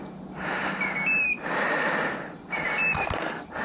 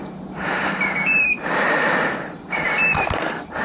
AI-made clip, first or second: second